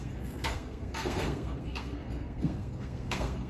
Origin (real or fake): fake